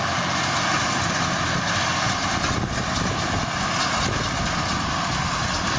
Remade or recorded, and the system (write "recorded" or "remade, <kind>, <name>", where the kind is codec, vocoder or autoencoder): recorded